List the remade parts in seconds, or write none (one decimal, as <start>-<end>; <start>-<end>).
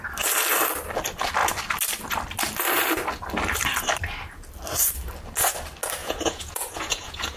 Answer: 6.0-7.4